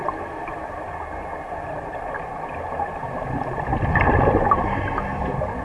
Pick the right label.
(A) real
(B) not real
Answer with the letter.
A